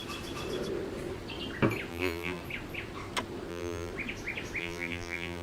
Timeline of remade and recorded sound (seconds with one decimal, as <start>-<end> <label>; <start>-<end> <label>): 0.0-1.9 recorded; 1.9-2.4 remade; 2.4-3.5 recorded; 3.5-3.9 remade; 3.9-4.6 recorded; 4.6-5.4 remade